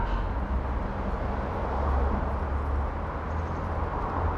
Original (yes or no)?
yes